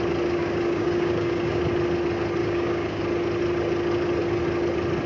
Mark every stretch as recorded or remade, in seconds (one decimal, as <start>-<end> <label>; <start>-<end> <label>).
0.0-0.4 recorded; 0.4-1.6 remade; 1.6-2.4 recorded; 2.4-3.0 remade; 3.0-5.1 recorded